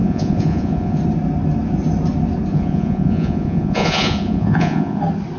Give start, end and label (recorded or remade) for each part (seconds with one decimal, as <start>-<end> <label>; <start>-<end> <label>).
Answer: 0.0-1.0 remade; 1.0-2.5 recorded; 2.5-5.0 remade; 5.0-5.4 recorded